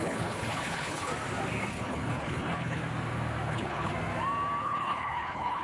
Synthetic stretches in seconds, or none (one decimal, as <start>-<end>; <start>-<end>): 0.0-1.1; 1.7-2.8; 3.5-3.9; 4.6-5.6